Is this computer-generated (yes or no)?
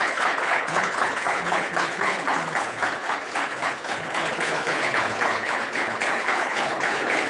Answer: yes